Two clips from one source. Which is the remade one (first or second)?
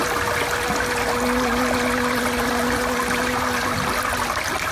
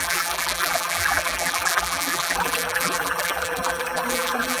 second